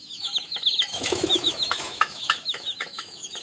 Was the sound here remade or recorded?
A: remade